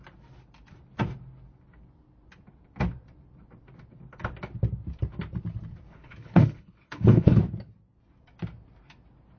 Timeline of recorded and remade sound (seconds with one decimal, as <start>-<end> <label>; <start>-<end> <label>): 0.0-5.9 recorded; 5.9-7.4 remade; 7.4-9.4 recorded